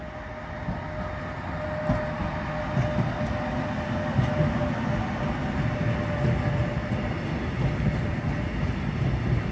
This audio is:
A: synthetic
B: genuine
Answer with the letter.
B